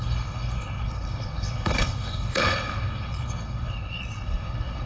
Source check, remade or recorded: remade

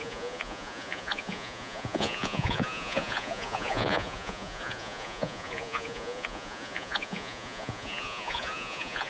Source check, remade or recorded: remade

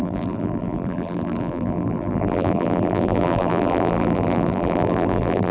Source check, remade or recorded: remade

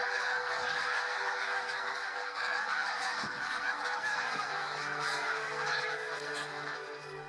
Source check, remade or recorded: remade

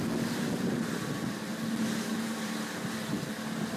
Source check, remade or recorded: recorded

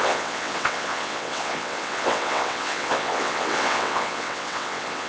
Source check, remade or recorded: remade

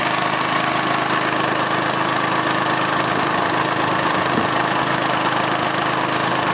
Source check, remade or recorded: recorded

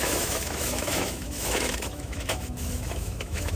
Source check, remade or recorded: remade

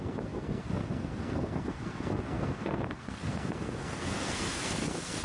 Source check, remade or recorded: remade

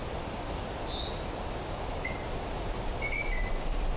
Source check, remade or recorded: recorded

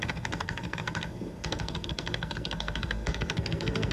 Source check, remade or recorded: remade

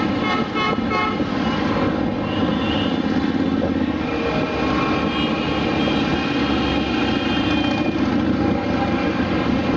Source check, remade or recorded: recorded